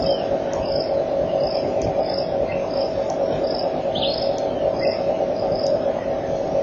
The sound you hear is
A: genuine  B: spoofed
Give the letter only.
A